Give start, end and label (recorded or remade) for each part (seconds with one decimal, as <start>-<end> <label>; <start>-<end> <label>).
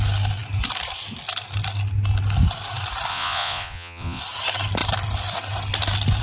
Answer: 0.0-3.1 recorded; 3.1-4.2 remade; 4.2-6.2 recorded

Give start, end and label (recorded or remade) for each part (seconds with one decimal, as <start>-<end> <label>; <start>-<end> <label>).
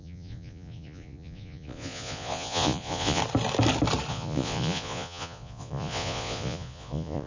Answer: 0.0-3.2 remade; 3.2-4.1 recorded; 4.1-7.3 remade